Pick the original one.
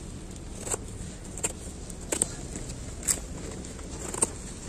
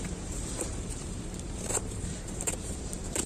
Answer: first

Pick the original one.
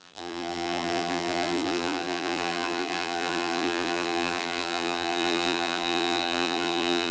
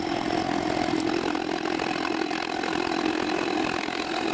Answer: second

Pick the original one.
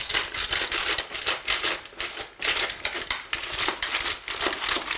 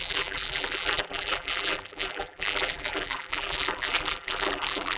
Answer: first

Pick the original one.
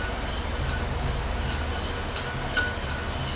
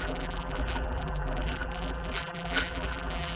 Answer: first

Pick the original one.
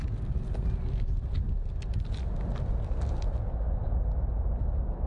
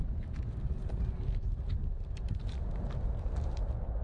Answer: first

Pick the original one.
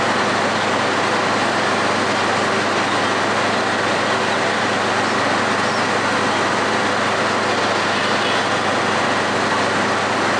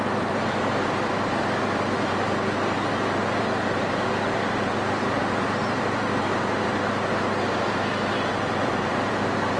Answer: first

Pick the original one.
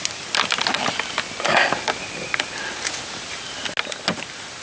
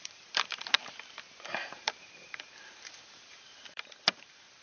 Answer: first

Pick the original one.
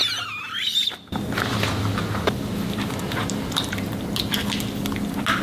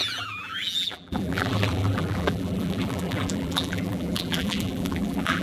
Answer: first